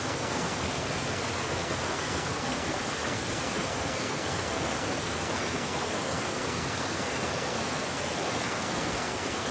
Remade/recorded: remade